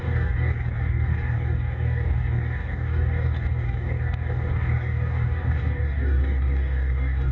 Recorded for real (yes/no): no